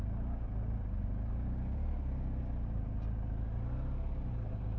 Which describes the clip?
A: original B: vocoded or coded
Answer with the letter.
A